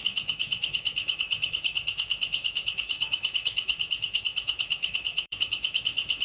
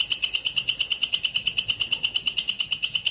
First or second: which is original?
second